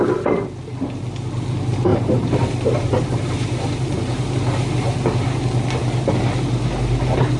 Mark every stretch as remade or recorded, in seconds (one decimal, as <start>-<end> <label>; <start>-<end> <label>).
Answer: 0.0-1.9 recorded; 1.9-4.2 remade; 4.2-7.4 recorded